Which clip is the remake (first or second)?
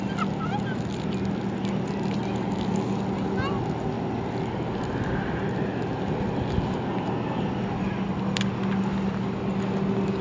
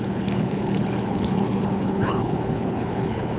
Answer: second